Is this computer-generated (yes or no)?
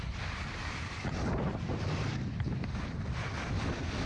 no